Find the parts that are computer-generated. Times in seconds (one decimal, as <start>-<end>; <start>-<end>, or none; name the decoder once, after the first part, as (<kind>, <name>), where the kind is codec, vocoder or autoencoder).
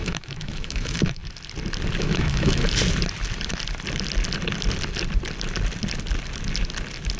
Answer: 0.0-1.2 (autoencoder, DAC-VAE); 2.0-2.6